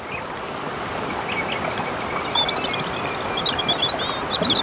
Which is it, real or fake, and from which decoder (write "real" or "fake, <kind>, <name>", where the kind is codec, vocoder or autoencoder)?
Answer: real